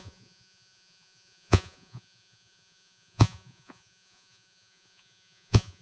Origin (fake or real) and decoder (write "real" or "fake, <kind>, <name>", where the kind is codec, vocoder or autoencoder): fake, vocoder, Vocos